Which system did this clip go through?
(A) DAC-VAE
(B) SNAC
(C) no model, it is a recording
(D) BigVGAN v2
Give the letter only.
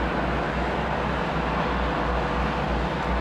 C